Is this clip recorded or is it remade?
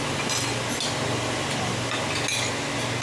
recorded